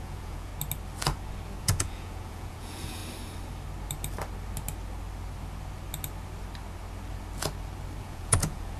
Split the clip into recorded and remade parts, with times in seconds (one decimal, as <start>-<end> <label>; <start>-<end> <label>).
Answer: 0.0-0.5 remade; 0.5-1.6 recorded; 1.6-3.0 remade; 3.0-8.0 recorded; 8.0-8.8 remade